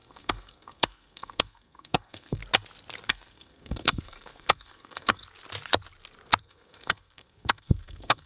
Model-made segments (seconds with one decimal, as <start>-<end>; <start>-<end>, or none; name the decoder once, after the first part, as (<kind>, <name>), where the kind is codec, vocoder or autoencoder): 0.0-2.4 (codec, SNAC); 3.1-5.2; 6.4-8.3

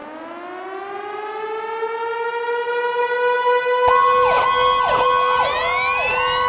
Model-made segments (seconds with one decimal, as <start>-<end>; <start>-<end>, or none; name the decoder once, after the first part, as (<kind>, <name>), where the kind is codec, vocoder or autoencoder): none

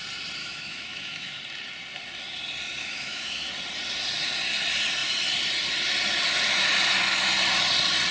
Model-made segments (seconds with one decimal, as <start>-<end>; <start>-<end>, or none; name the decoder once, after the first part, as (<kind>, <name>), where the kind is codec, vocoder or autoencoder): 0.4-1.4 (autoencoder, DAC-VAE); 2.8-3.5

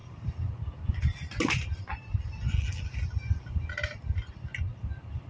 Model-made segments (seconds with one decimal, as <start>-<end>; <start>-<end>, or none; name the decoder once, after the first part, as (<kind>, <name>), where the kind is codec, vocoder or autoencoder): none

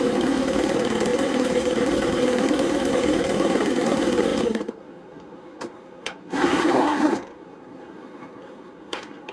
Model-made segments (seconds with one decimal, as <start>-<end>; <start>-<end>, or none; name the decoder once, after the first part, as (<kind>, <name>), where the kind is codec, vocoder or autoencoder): 0.0-9.3 (codec, SNAC)